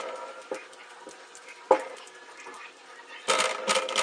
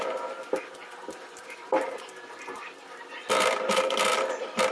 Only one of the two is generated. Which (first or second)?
second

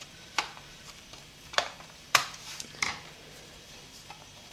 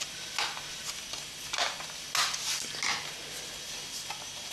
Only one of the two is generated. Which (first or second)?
first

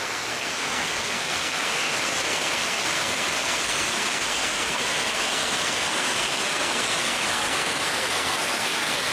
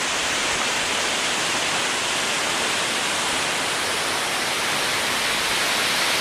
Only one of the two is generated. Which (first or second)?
first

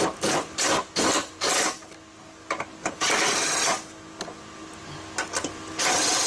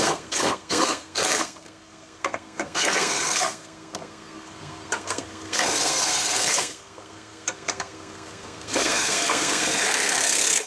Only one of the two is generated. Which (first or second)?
second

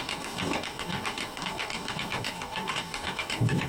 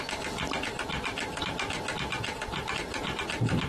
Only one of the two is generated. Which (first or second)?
first